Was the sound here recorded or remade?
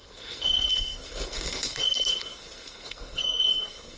remade